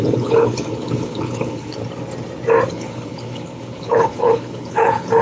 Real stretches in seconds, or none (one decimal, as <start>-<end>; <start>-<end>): 1.8-2.7